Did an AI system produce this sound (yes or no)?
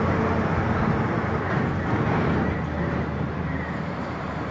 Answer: no